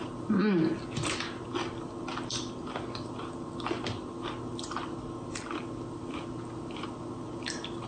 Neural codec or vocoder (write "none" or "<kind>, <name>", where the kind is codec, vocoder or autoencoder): none